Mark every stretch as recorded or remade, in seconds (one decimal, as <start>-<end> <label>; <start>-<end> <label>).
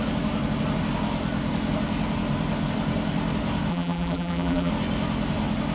0.0-3.7 recorded; 3.7-4.7 remade; 4.7-5.7 recorded